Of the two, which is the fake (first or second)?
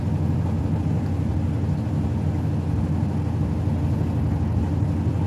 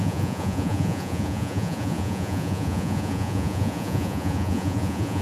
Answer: second